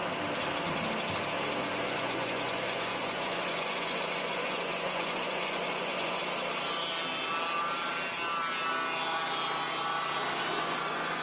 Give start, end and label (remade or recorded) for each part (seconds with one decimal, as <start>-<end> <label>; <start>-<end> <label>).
0.0-1.6 recorded; 1.6-6.2 remade; 6.2-10.4 recorded; 10.4-11.2 remade